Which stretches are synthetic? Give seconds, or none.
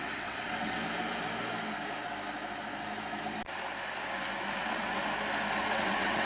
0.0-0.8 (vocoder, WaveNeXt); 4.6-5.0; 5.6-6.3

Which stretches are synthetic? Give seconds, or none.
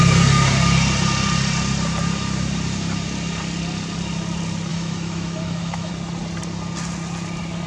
4.7-5.9 (autoencoder, DAC-VAE)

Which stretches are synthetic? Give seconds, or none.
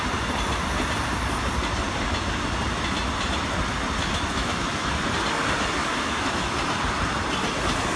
4.0-5.0 (autoencoder, DAC-VAE); 5.8-6.5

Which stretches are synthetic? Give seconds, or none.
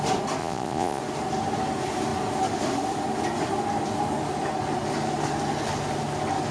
0.4-1.0 (vocoder, Vocos)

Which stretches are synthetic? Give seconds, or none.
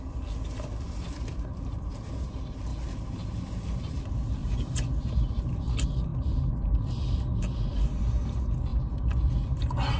2.7-4.0 (vocoder, BigVGAN v2); 4.4-5.6; 6.1-6.9; 8.7-9.3